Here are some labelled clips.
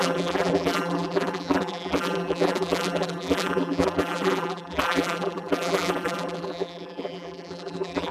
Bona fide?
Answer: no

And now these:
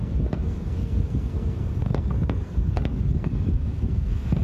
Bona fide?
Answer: no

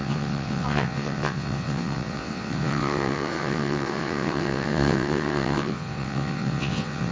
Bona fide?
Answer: no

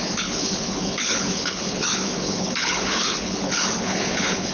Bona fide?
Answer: no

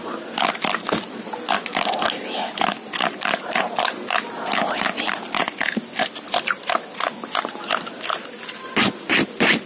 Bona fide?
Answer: yes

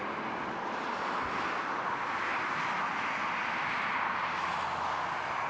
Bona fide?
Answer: yes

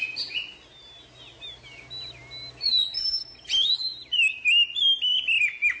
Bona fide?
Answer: yes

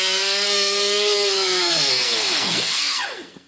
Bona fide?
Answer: no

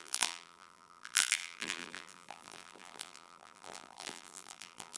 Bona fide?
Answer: no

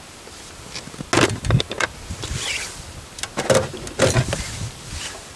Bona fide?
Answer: yes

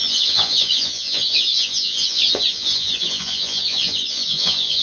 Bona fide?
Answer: no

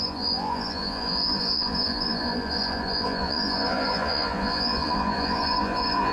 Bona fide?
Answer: no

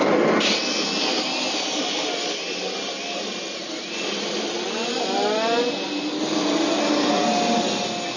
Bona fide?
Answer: yes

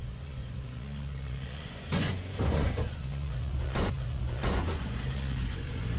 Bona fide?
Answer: no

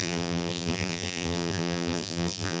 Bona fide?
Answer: no